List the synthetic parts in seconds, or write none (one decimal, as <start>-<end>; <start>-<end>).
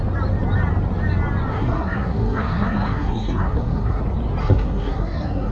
1.5-4.0; 4.4-5.5